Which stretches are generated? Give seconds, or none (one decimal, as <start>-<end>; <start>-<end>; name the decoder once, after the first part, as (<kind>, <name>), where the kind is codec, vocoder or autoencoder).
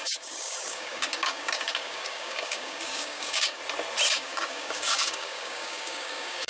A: 0.0-3.6 (codec, DAC); 4.1-6.5